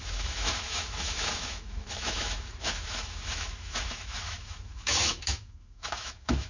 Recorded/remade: remade